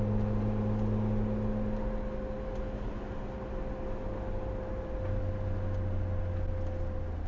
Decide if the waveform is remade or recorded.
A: recorded